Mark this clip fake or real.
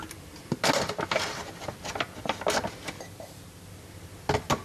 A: real